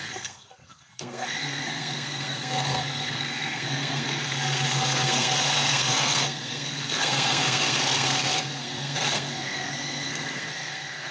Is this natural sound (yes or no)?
no